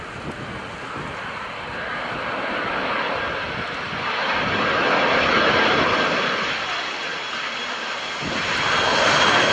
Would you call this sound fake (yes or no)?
no